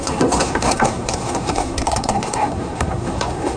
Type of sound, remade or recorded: remade